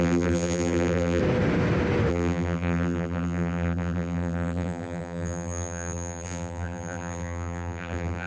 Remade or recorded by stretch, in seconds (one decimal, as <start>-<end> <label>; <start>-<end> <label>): 0.0-1.2 remade; 1.2-2.1 recorded; 2.1-8.3 remade